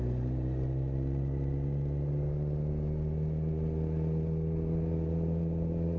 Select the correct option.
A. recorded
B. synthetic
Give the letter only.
A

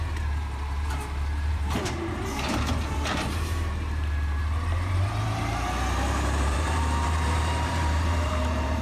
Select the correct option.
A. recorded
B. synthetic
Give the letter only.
B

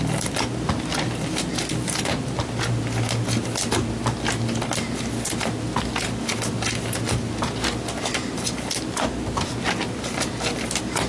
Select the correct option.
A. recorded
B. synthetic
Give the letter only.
A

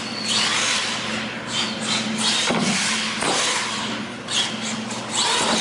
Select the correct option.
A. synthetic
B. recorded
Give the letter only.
B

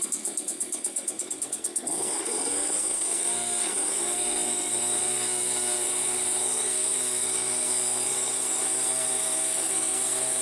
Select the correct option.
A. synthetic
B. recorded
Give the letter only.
A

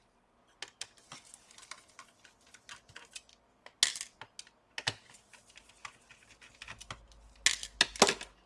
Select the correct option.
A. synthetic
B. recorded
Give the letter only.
B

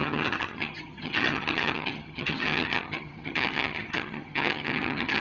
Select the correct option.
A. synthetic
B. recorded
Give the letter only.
A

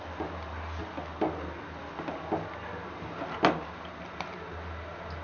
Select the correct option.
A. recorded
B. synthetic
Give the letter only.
A